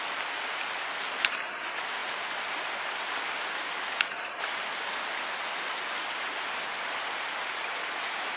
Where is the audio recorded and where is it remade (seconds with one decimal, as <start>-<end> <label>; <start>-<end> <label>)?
0.0-8.4 recorded